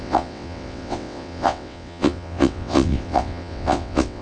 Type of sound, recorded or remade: remade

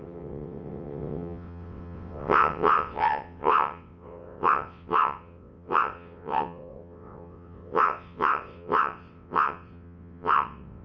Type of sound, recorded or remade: remade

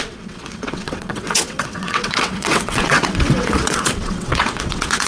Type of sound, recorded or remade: remade